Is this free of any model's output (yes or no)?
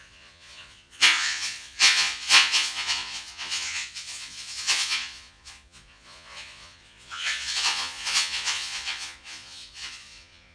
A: no